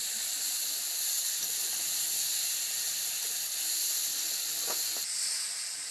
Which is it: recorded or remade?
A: recorded